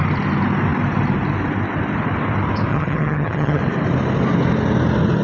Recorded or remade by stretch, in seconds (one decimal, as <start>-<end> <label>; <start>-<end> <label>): 0.0-2.7 recorded; 2.7-3.6 remade; 3.6-5.2 recorded

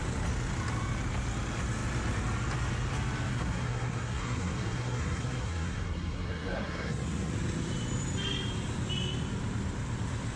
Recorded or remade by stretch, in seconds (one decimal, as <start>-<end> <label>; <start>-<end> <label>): 0.0-3.3 recorded; 3.3-7.3 remade; 7.3-10.4 recorded

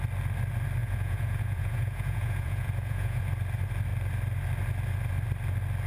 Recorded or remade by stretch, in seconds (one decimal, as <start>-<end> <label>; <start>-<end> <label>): 0.0-0.8 recorded; 0.8-3.2 remade; 3.2-5.9 recorded